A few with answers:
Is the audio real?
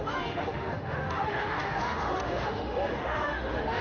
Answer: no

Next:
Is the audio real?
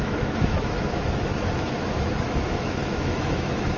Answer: no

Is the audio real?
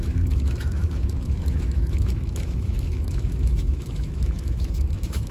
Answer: no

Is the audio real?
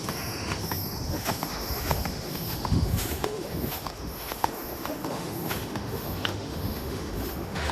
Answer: no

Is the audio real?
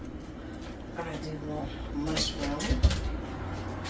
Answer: yes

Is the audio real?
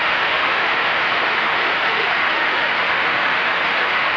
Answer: no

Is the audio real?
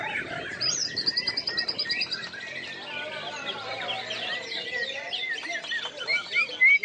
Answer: yes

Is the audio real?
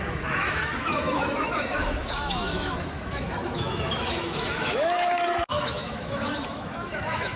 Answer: no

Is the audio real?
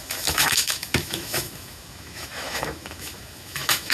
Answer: no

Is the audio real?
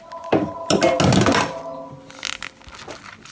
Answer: yes